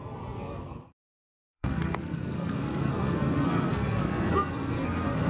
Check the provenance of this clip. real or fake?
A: fake